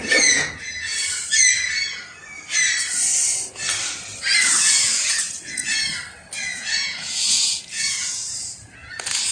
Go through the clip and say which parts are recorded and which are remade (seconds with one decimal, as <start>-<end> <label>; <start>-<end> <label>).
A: 0.0-0.9 remade; 0.9-4.7 recorded; 4.7-5.7 remade; 5.7-6.4 recorded; 6.4-9.3 remade